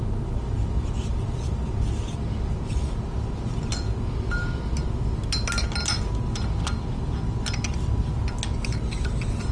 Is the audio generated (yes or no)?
no